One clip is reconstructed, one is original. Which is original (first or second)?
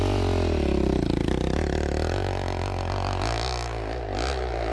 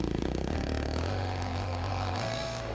first